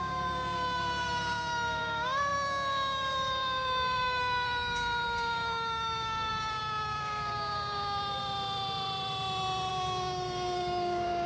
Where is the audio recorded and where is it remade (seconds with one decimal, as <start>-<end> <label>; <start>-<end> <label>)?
0.0-8.2 remade; 8.2-9.7 recorded; 9.7-11.3 remade